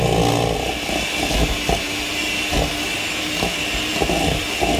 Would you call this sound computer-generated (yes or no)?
no